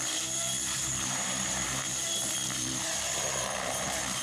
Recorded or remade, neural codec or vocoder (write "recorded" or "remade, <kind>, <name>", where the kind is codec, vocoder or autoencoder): remade, vocoder, BigVGAN v2